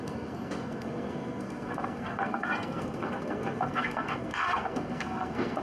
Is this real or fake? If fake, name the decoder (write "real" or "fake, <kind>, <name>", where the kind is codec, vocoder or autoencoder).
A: fake, codec, SNAC